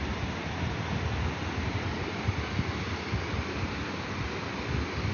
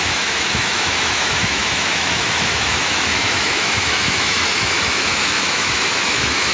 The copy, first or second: second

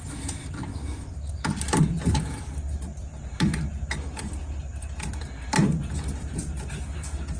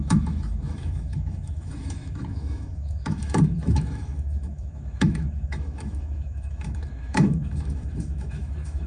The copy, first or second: second